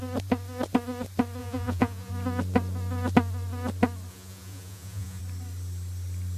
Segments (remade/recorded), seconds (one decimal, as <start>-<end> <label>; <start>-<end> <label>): 0.0-1.4 recorded; 1.4-2.1 remade; 2.1-4.1 recorded; 4.1-5.2 remade; 5.2-6.4 recorded